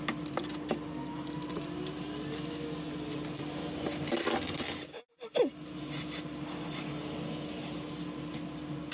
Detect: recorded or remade recorded